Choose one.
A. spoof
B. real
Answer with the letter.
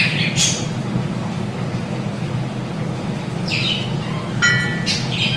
B